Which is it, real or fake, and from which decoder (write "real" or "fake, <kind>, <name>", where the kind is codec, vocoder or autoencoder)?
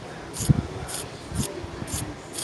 real